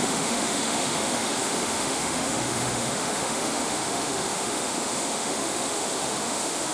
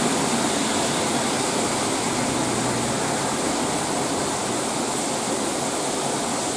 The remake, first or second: first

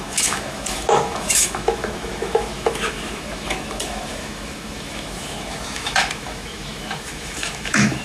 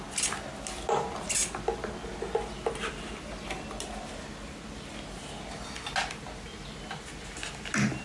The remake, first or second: first